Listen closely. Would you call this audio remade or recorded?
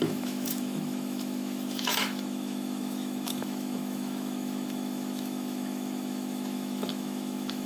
remade